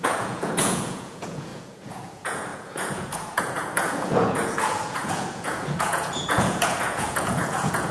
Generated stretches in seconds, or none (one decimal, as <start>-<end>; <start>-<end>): 0.0-7.9